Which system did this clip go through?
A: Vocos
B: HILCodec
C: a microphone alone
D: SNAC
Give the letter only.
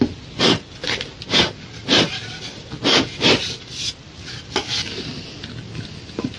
C